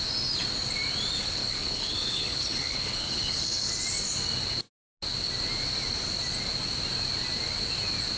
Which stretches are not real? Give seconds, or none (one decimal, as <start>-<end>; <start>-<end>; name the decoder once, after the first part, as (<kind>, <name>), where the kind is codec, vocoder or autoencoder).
1.2-3.7 (codec, HILCodec)